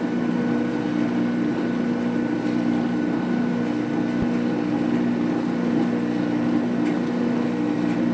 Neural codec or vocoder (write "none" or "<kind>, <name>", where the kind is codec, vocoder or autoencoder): none